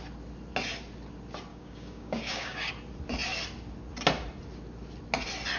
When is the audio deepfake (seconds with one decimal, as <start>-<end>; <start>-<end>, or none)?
1.5-2.7